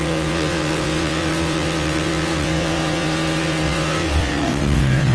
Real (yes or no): no